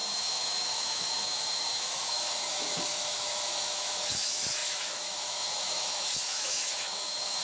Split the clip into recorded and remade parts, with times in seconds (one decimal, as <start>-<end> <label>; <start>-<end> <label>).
0.0-7.4 remade